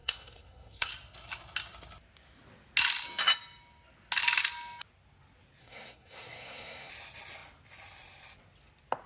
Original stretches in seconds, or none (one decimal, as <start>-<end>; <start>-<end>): 0.9-5.6; 6.9-9.1